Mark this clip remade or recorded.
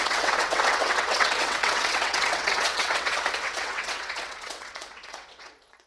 remade